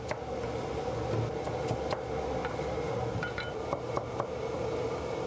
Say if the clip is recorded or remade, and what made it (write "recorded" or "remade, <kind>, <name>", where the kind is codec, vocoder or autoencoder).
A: recorded